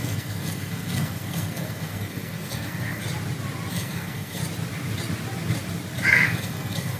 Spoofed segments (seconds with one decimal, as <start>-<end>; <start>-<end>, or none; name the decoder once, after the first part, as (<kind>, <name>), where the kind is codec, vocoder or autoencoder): 0.0-3.0 (codec, SNAC); 3.7-4.4; 6.1-7.0